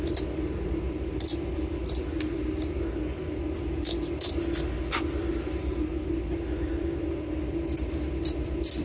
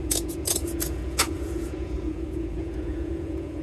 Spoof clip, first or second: second